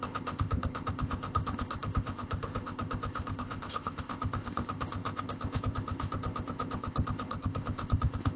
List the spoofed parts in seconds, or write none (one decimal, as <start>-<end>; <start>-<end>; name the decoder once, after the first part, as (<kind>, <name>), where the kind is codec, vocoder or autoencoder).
0.0-8.4 (codec, ZipCodec)